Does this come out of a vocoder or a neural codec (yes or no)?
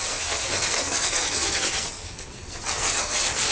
yes